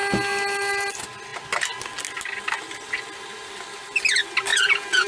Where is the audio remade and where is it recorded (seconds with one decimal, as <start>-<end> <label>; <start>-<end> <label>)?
0.0-4.5 recorded; 4.5-5.1 remade